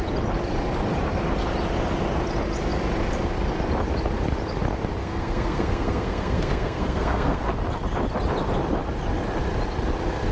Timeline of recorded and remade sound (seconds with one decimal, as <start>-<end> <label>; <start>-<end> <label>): 0.0-5.0 recorded; 5.0-7.4 remade; 7.4-10.3 recorded